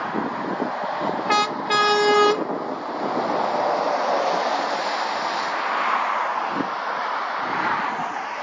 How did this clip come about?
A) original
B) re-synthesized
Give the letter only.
A